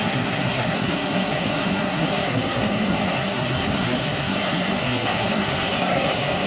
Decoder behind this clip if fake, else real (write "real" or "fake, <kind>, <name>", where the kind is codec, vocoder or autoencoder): fake, codec, SNAC